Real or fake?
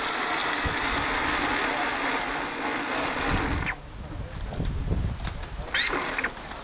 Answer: real